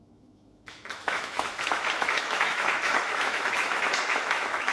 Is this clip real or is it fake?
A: fake